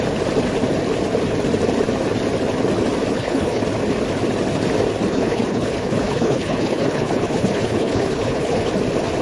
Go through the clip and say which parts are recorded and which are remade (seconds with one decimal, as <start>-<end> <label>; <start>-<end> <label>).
0.0-3.1 recorded; 3.1-3.6 remade; 3.6-5.1 recorded; 5.1-8.7 remade; 8.7-9.2 recorded